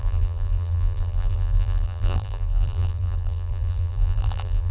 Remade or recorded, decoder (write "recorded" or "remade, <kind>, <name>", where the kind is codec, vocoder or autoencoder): remade, vocoder, BigVGAN v2